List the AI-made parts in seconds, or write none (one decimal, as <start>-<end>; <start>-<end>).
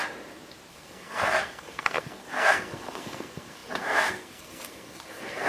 0.7-5.5